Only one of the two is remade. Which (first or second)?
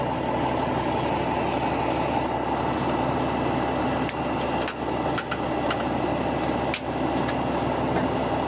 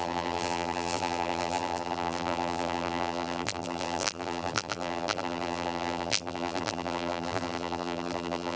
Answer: second